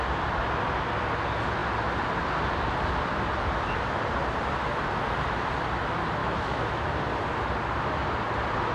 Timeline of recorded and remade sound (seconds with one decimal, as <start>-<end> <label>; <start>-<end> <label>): 0.0-6.2 recorded; 6.2-6.9 remade; 6.9-8.7 recorded